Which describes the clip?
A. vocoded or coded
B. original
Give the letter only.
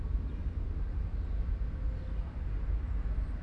B